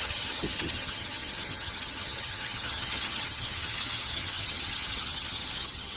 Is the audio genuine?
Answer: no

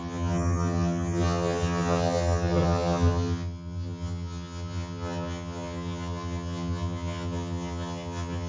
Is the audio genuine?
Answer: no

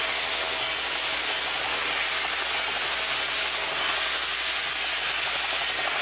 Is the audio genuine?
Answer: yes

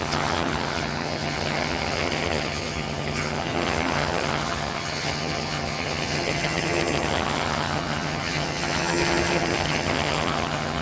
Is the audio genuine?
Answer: no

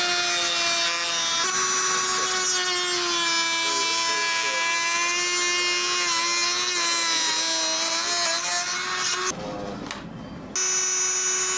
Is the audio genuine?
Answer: yes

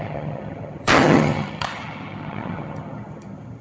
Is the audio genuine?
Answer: no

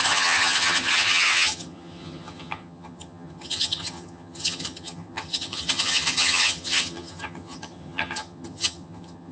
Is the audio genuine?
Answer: no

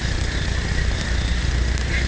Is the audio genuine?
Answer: yes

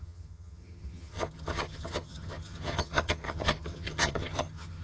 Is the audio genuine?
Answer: no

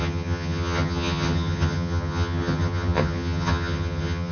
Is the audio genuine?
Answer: no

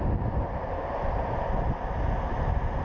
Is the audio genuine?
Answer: yes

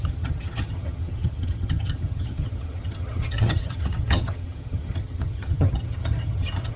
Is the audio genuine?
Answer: no